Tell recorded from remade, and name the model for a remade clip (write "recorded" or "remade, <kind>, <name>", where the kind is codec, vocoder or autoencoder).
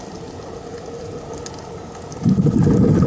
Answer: recorded